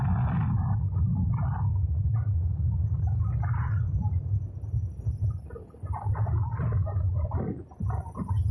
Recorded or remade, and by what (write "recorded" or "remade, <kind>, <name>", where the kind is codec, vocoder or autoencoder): recorded